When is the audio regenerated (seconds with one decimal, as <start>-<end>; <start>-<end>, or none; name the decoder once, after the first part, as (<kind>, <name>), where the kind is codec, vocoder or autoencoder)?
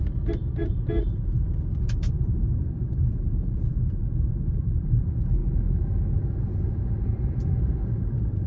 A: 0.0-5.4 (vocoder, BigVGAN v2); 6.4-8.5